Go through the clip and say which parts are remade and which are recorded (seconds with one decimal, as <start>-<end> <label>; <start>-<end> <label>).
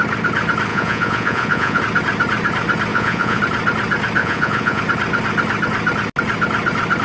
0.0-0.7 recorded; 0.7-1.8 remade; 1.8-2.9 recorded; 2.9-3.4 remade; 3.4-4.2 recorded; 4.2-4.8 remade; 4.8-7.0 recorded